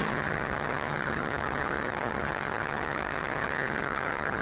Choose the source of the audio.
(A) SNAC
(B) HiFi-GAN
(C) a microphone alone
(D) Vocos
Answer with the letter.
B